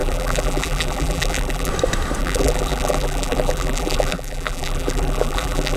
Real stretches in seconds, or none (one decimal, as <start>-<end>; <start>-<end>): 1.7-2.2